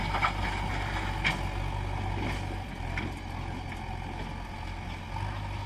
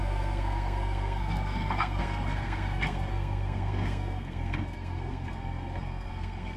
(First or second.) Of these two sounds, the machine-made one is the second